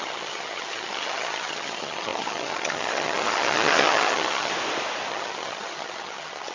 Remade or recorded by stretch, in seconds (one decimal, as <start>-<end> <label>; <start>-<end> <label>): 0.0-4.5 remade; 4.5-5.1 recorded; 5.1-6.5 remade